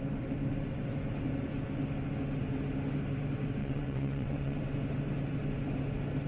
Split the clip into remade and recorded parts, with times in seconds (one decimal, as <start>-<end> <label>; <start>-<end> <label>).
0.0-3.6 recorded; 3.6-4.6 remade; 4.6-6.3 recorded